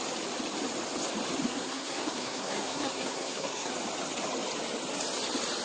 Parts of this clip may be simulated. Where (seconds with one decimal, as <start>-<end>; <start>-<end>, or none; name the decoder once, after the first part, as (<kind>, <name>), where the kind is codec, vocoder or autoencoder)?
1.5-3.7 (codec, SNAC)